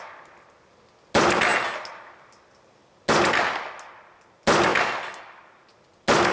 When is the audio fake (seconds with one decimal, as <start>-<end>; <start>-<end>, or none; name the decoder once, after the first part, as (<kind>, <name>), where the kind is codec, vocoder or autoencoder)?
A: none